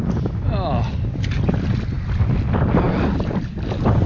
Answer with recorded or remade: recorded